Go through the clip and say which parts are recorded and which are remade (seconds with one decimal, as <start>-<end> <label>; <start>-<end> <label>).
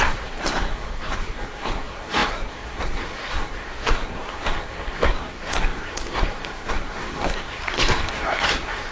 0.0-8.9 remade